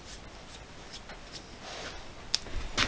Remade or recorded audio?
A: recorded